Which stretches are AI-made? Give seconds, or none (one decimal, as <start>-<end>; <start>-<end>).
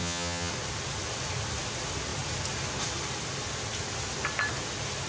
0.0-0.5